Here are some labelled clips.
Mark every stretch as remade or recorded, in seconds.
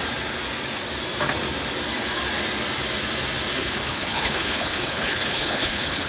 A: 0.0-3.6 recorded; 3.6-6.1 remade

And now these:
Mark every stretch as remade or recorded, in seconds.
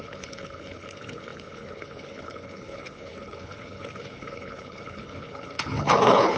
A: 0.0-6.4 remade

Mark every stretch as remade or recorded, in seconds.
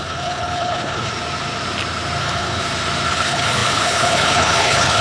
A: 0.0-1.1 remade; 1.1-2.2 recorded; 2.2-2.6 remade; 2.6-3.1 recorded; 3.1-5.0 remade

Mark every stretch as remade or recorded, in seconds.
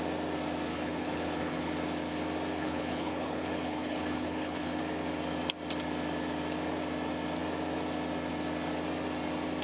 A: 0.0-0.7 recorded; 0.7-1.7 remade; 1.7-2.6 recorded; 2.6-4.8 remade; 4.8-9.6 recorded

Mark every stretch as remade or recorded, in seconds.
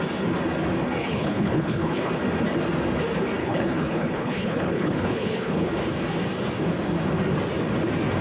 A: 0.0-1.0 recorded; 1.0-2.1 remade; 2.1-3.4 recorded; 3.4-5.7 remade; 5.7-8.2 recorded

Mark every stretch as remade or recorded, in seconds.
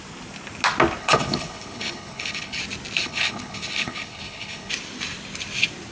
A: 0.0-1.0 recorded; 1.0-2.6 remade; 2.6-3.0 recorded; 3.0-4.7 remade; 4.7-5.9 recorded